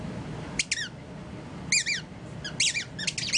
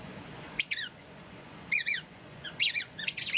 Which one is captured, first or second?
first